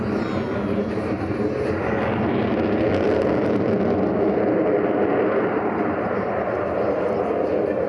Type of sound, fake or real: real